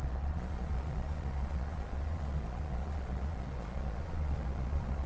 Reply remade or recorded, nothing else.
remade